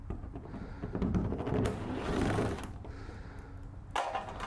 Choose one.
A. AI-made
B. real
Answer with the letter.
B